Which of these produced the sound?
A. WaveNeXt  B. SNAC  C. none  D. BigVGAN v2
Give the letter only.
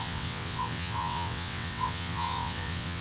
A